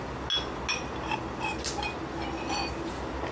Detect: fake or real real